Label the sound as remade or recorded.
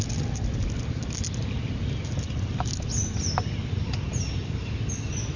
recorded